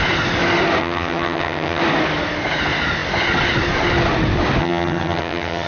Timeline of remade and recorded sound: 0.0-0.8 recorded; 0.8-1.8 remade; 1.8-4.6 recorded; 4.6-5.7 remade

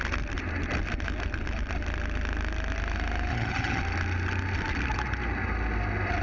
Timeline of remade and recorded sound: 0.0-3.3 recorded; 3.3-3.8 remade; 3.8-6.2 recorded

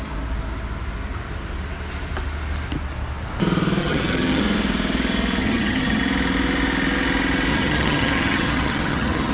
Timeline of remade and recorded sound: 0.0-3.8 recorded; 3.8-4.4 remade; 4.4-5.4 recorded; 5.4-6.0 remade; 6.0-7.5 recorded; 7.5-9.3 remade

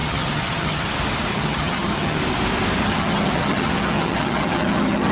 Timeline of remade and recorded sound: 0.0-0.9 remade; 0.9-1.3 recorded; 1.3-2.2 remade; 2.2-2.8 recorded; 2.8-5.1 remade

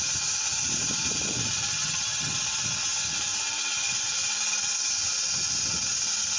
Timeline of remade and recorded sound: 0.0-1.7 recorded; 1.7-2.3 remade; 2.3-6.4 recorded

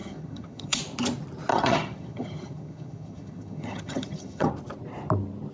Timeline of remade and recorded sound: 0.0-0.8 remade; 0.8-1.5 recorded; 1.5-4.5 remade; 4.5-5.5 recorded